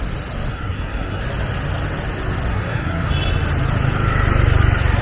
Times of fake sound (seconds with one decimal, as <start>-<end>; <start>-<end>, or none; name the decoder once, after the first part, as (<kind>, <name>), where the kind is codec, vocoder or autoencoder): 0.5-1.2 (codec, SNAC); 2.5-3.1

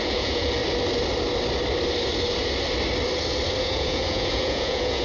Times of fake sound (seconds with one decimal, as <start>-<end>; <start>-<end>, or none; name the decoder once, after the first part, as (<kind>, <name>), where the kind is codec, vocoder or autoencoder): 0.0-0.6 (vocoder, Vocos); 3.6-5.0

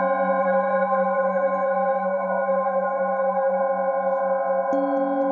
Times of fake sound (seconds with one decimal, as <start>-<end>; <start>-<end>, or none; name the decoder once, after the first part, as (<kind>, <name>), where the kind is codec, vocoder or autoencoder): 0.4-3.6 (codec, SNAC)